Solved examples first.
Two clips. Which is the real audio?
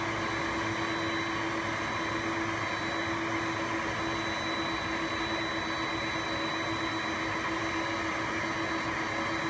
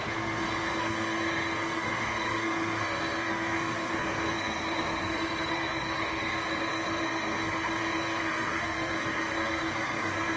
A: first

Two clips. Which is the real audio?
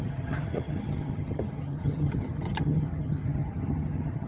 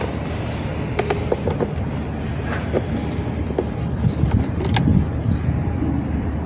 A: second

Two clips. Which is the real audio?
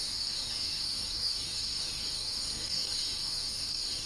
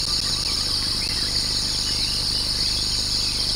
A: second